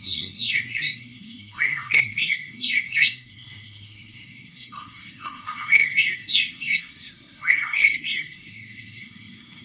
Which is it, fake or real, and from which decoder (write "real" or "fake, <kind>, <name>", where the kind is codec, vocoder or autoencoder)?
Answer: fake, codec, SNAC